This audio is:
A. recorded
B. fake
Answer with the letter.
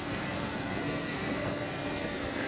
B